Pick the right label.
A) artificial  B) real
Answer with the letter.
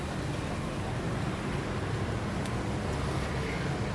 B